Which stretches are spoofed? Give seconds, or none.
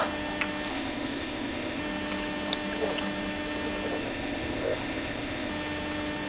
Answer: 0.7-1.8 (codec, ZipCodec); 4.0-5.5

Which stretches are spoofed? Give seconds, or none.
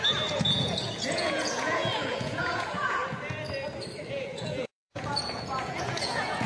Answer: 0.0-3.0 (vocoder, Vocos); 4.1-6.5